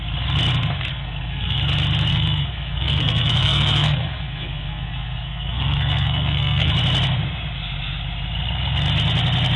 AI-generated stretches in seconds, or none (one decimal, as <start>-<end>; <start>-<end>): 0.9-1.6; 2.1-6.7